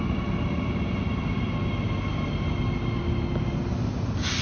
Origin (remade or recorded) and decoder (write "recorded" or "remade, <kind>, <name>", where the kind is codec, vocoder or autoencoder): recorded